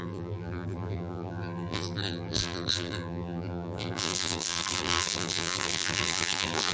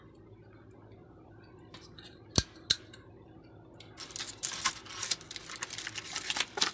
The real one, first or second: second